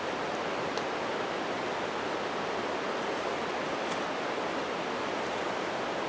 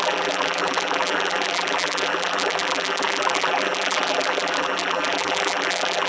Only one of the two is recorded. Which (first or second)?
first